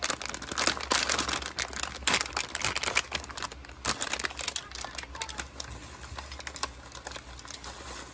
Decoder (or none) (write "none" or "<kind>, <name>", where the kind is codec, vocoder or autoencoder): none